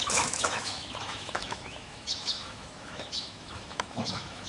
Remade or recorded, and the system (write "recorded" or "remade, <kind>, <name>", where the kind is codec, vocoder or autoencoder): remade, autoencoder, DAC-VAE